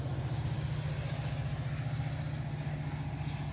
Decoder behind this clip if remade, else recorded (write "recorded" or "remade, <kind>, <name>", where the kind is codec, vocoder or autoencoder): recorded